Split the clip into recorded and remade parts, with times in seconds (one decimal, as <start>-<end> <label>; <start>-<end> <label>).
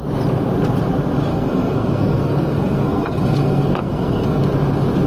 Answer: 0.0-1.3 recorded; 1.3-4.4 remade; 4.4-5.1 recorded